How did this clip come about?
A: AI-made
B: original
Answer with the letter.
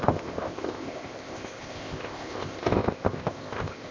A